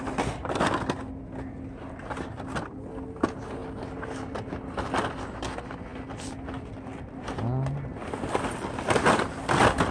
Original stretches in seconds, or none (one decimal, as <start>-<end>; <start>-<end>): 0.0-9.9